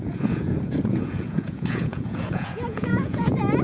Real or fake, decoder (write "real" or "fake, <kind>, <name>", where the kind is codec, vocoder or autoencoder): fake, vocoder, Vocos